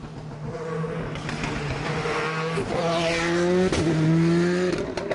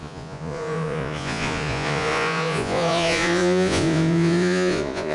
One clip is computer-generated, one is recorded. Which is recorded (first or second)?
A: first